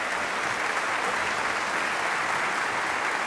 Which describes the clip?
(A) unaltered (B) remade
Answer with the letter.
A